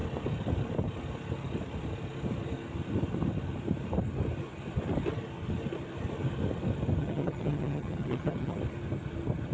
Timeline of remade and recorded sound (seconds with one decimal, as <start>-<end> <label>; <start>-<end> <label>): 0.0-7.0 recorded; 7.0-8.6 remade; 8.6-9.5 recorded